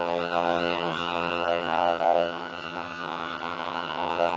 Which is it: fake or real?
fake